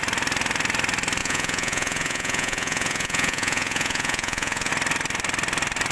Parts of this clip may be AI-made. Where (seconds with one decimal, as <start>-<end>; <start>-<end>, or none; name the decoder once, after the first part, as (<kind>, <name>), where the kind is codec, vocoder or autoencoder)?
1.2-4.7 (vocoder, Vocos)

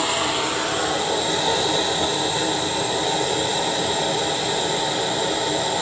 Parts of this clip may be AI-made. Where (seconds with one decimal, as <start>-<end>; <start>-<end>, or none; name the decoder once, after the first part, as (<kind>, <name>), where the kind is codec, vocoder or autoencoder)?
none